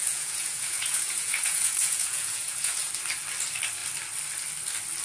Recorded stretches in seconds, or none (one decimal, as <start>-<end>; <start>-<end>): 2.9-5.0